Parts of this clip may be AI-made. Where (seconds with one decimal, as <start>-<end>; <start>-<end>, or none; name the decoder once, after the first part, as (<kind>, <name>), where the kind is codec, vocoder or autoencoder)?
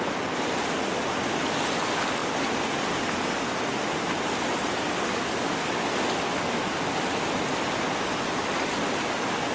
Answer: none